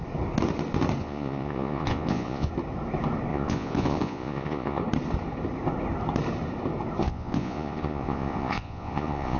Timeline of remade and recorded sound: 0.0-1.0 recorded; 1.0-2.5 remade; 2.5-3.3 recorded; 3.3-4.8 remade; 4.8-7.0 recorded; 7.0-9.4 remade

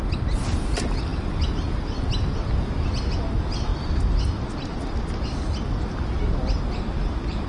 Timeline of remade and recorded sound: 0.0-7.5 recorded

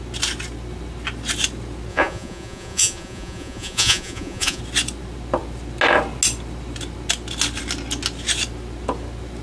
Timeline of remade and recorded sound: 0.0-1.9 recorded; 1.9-4.6 remade; 4.6-9.4 recorded

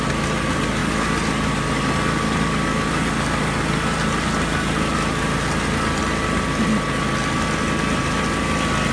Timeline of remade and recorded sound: 0.0-8.9 recorded

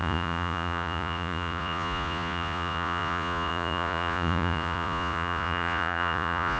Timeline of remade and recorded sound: 0.0-6.6 remade

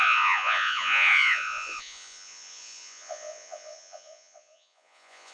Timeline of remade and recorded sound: 0.0-5.3 remade

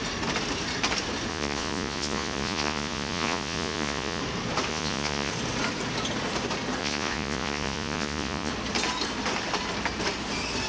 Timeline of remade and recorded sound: 0.0-1.3 recorded; 1.3-4.2 remade; 4.2-4.7 recorded; 4.7-5.3 remade; 5.3-6.8 recorded; 6.8-8.5 remade; 8.5-10.7 recorded